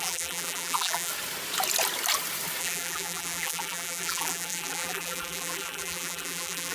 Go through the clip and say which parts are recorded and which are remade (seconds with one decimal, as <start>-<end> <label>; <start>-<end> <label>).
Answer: 0.0-1.1 remade; 1.1-2.6 recorded; 2.6-6.7 remade